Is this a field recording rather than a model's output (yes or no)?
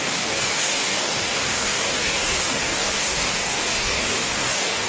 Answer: no